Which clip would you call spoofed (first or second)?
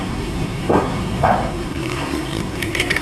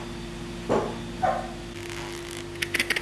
first